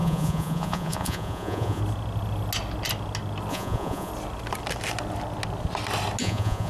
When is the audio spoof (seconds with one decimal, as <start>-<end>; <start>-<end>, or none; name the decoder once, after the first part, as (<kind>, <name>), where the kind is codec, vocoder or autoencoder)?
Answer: 0.0-1.8 (vocoder, Vocos); 3.5-4.1; 6.2-6.7